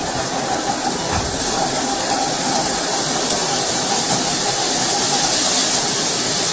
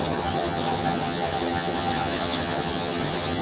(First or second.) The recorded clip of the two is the first